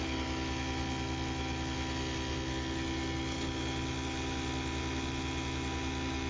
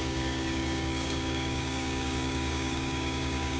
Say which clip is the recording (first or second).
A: first